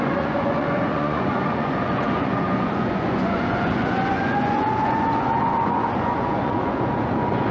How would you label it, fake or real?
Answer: fake